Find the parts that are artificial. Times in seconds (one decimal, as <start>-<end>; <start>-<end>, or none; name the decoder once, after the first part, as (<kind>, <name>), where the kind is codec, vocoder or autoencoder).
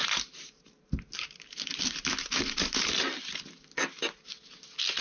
0.0-3.0 (vocoder, BigVGAN v2)